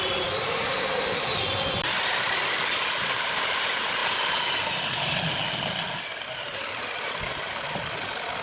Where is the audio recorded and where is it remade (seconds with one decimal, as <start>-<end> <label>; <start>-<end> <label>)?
0.0-6.5 recorded; 6.5-7.8 remade; 7.8-8.4 recorded